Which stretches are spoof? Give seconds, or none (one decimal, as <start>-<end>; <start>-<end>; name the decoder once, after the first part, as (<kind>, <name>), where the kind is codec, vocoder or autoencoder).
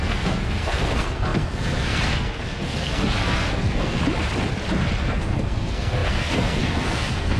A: 0.0-4.0 (codec, SNAC); 5.0-7.4